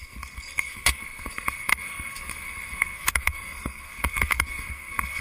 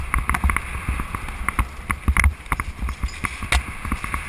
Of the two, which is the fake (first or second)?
first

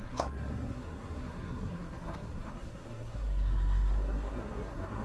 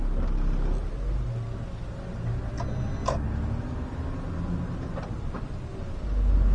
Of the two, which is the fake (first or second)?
first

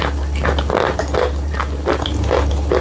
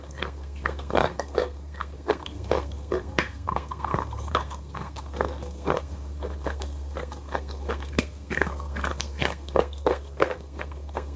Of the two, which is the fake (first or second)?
second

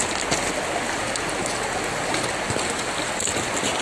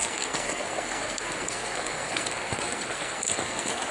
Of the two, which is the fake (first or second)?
second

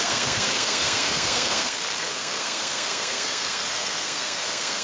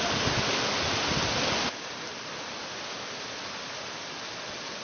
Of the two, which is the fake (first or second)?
first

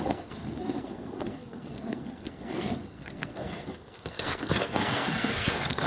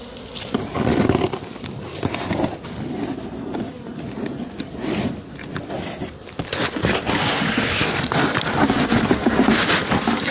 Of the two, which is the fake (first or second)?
first